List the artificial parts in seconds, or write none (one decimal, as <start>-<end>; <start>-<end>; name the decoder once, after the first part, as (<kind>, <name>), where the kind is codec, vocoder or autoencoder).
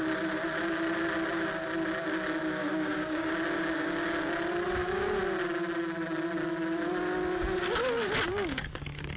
2.6-3.3 (codec, DAC); 8.3-9.2